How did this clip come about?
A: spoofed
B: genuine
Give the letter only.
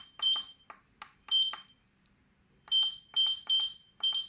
A